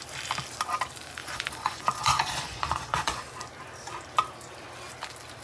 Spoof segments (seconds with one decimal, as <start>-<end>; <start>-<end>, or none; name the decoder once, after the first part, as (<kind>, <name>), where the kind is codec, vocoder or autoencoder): 1.2-3.2 (vocoder, Vocos)